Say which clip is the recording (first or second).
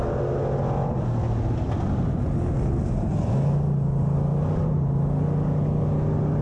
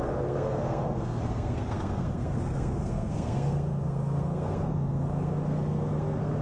first